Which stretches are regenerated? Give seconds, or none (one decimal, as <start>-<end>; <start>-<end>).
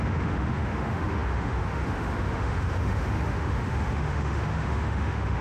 0.0-5.4